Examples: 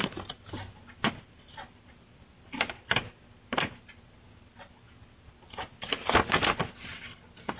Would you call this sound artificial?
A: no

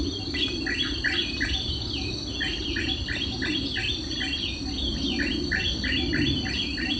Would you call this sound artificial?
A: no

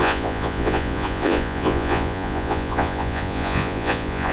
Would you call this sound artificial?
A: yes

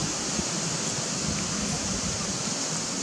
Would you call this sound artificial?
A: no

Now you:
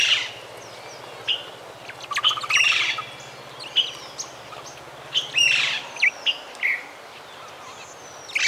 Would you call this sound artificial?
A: no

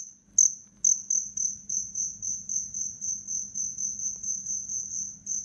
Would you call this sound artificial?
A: no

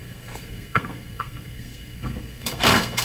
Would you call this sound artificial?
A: yes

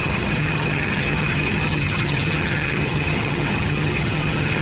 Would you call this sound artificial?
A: yes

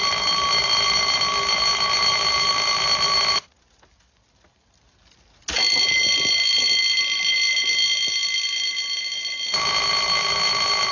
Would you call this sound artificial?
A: no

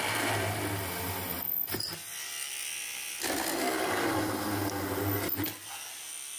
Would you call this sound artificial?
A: no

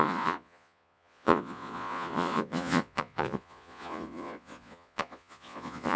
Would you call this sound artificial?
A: yes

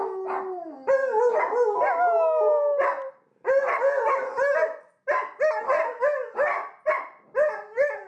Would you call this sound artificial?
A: no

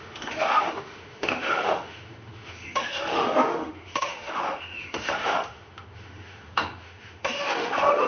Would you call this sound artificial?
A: yes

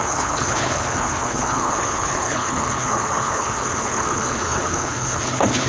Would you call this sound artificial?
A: yes